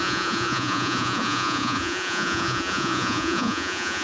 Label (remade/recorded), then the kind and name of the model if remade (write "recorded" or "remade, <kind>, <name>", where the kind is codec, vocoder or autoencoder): remade, vocoder, Vocos